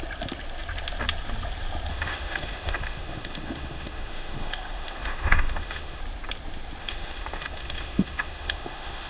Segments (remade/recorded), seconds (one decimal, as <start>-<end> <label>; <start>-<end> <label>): 0.0-1.9 recorded; 1.9-6.0 remade; 6.0-6.8 recorded; 6.8-9.1 remade